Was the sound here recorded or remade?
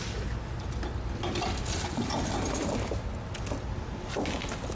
recorded